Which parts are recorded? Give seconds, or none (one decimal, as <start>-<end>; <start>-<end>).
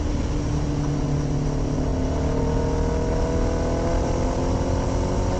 0.0-5.4